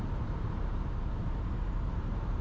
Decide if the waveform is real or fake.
fake